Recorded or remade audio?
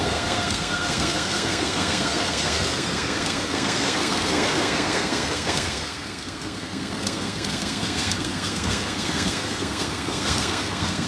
remade